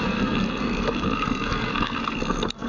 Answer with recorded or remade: remade